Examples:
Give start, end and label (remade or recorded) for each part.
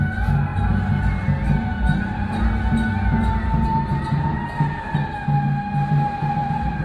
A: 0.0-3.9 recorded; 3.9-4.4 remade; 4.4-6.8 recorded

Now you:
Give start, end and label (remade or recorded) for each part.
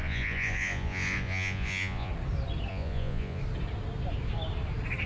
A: 0.0-2.1 remade; 2.1-2.7 recorded; 2.7-3.4 remade; 3.4-5.1 recorded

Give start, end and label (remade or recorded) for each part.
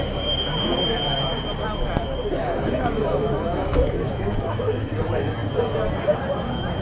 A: 0.0-2.4 recorded; 2.4-4.9 remade; 4.9-6.8 recorded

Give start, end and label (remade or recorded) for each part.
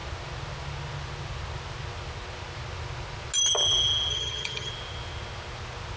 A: 0.0-4.1 recorded; 4.1-4.7 remade; 4.7-6.0 recorded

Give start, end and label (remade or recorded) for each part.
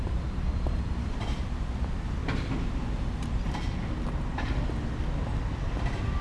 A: 0.0-2.2 remade; 2.2-5.6 recorded; 5.6-6.2 remade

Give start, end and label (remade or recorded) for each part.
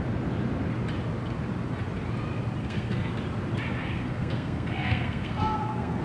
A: 0.0-2.6 recorded; 2.6-3.1 remade; 3.1-3.8 recorded; 3.8-6.0 remade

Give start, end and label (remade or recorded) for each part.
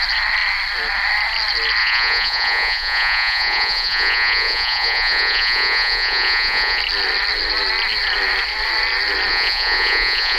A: 0.0-1.8 recorded; 1.8-6.8 remade; 6.8-9.3 recorded; 9.3-10.4 remade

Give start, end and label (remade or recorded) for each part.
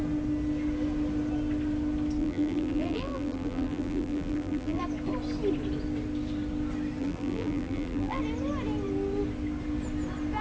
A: 0.0-2.2 recorded; 2.2-4.8 remade; 4.8-7.0 recorded; 7.0-8.2 remade; 8.2-10.4 recorded